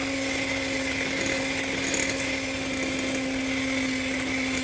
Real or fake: real